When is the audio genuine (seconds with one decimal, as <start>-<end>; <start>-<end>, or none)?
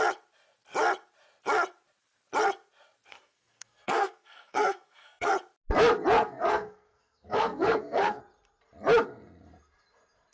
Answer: 0.0-3.1; 5.3-6.2; 8.2-10.3